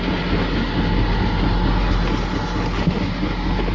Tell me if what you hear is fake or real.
real